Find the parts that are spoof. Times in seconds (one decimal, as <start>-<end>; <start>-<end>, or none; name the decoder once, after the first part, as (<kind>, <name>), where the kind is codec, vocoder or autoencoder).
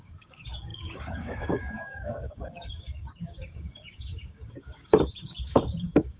0.0-6.2 (codec, DAC)